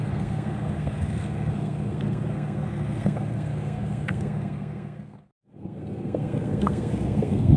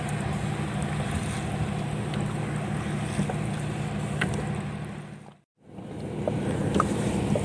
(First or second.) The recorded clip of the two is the second